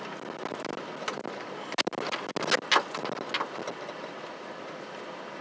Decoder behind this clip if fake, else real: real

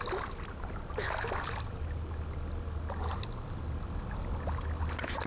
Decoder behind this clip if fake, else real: real